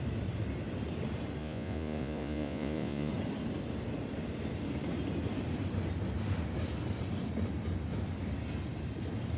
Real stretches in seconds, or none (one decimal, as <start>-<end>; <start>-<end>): 0.0-1.4; 3.1-9.4